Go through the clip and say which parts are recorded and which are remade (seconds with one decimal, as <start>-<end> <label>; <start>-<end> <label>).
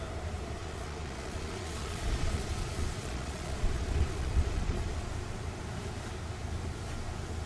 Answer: 0.0-0.6 recorded; 0.6-5.1 remade; 5.1-7.5 recorded